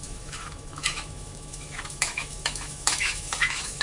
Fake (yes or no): yes